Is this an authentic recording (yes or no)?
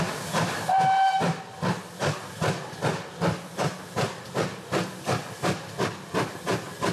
yes